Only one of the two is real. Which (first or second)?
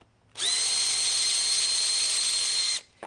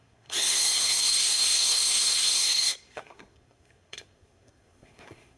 first